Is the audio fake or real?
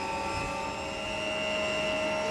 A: real